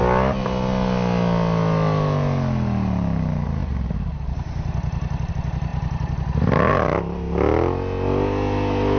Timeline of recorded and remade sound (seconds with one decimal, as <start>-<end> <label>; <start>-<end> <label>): 0.0-9.0 recorded